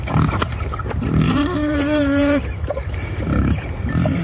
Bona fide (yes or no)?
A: no